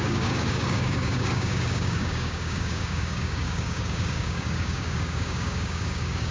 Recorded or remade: remade